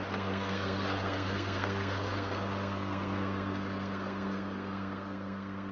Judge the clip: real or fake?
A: fake